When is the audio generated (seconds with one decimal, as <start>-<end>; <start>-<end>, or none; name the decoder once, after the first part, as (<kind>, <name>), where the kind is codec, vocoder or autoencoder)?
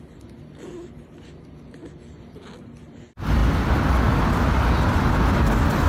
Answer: none